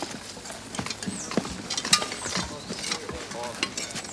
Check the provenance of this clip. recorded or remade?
recorded